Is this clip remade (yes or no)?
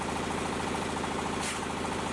no